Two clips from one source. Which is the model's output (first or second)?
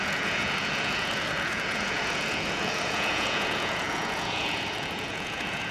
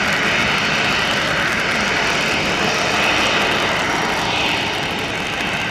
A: first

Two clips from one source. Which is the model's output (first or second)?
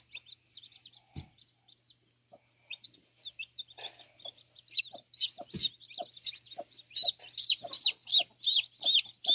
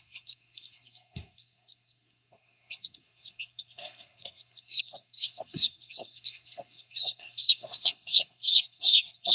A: second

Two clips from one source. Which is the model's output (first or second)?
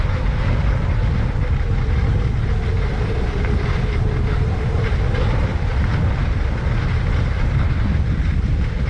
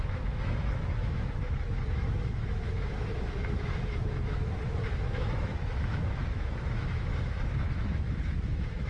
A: second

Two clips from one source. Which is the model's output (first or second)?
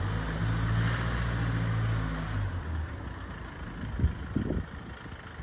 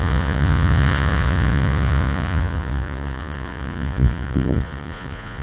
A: second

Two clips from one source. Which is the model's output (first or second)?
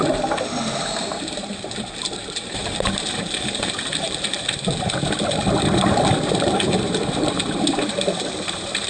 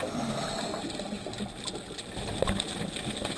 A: first